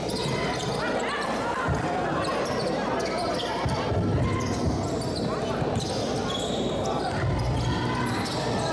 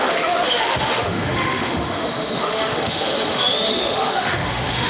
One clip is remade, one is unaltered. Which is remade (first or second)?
second